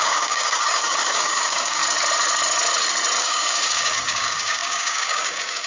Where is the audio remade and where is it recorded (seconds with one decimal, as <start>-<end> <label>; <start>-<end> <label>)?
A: 0.0-1.8 remade; 1.8-3.2 recorded; 3.2-5.7 remade

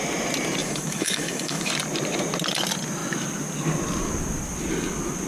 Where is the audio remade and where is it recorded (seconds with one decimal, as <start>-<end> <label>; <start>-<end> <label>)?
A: 0.0-0.6 recorded; 0.6-1.7 remade; 1.7-5.3 recorded

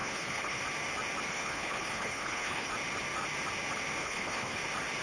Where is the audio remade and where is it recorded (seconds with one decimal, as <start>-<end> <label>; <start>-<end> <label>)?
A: 0.0-0.6 remade; 0.6-1.3 recorded; 1.3-2.7 remade; 2.7-4.0 recorded; 4.0-4.6 remade; 4.6-5.0 recorded

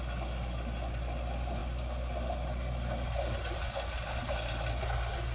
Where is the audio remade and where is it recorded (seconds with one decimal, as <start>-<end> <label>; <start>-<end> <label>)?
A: 0.0-5.3 recorded

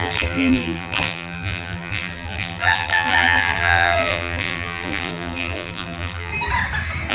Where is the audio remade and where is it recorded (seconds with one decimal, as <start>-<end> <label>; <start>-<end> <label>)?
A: 0.0-6.3 remade; 6.3-7.1 recorded

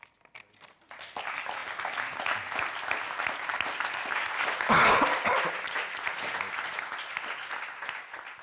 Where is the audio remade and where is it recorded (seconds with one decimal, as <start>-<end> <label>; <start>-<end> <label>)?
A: 0.0-8.4 recorded

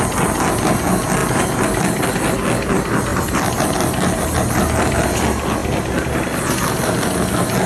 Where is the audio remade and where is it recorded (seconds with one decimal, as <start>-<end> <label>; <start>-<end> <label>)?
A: 0.0-1.2 recorded; 1.2-2.1 remade; 2.1-3.1 recorded; 3.1-4.2 remade; 4.2-5.6 recorded; 5.6-6.4 remade; 6.4-7.7 recorded